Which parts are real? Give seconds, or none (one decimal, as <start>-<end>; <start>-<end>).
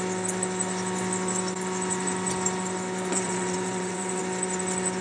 0.0-3.1; 4.2-5.0